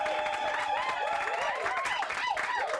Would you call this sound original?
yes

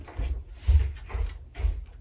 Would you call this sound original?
yes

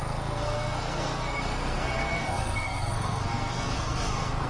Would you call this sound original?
no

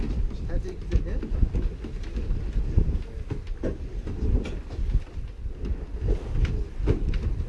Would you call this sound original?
yes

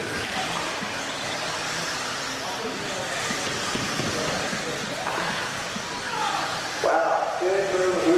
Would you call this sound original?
yes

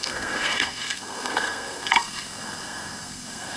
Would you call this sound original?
no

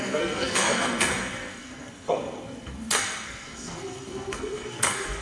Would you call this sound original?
no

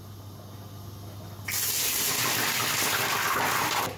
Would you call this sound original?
yes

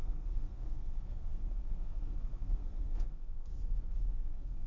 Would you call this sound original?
no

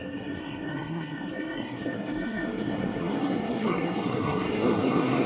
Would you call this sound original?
no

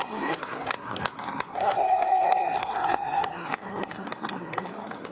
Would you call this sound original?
no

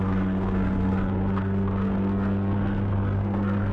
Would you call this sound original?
no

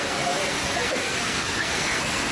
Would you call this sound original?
no